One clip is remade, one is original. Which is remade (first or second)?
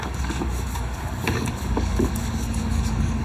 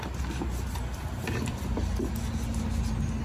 first